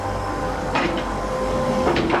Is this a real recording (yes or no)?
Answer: no